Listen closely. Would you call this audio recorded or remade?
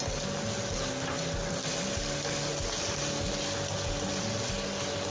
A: recorded